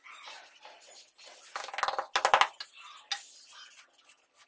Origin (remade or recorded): recorded